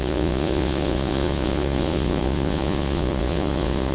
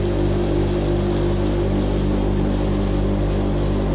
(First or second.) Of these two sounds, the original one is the second